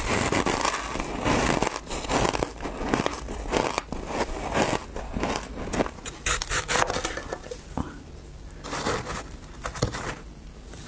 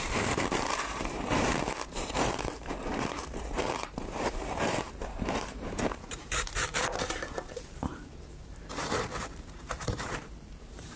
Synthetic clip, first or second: second